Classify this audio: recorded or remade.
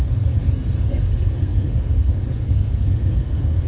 remade